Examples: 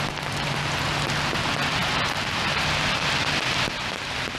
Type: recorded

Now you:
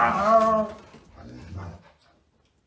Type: recorded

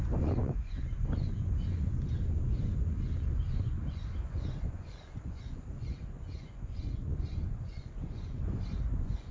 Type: remade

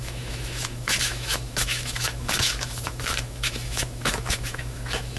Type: remade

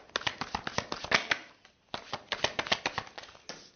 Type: recorded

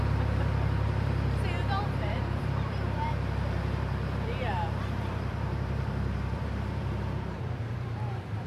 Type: remade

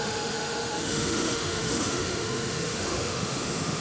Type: remade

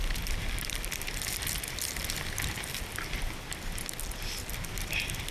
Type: recorded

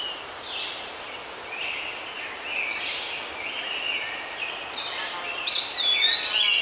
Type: recorded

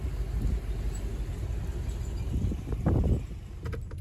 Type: recorded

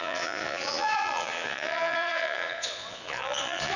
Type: remade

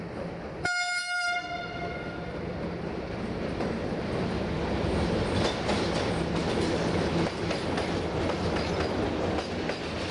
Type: recorded